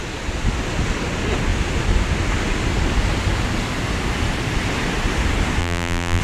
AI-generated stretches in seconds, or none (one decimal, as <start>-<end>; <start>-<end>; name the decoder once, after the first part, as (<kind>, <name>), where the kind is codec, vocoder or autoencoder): 5.6-6.2 (vocoder, BigVGAN v2)